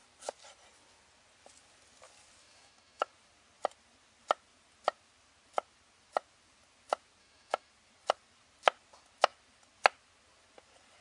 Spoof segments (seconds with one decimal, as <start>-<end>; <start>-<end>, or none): 2.4-3.1; 7.2-7.7